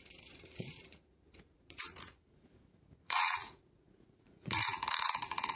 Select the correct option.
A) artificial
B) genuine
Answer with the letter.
A